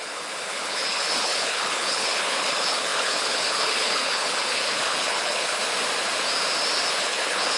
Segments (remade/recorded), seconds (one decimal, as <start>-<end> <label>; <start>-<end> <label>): 0.0-5.6 remade; 5.6-6.9 recorded; 6.9-7.6 remade